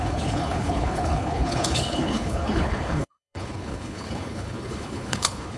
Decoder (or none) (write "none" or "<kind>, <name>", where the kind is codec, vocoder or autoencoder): codec, HILCodec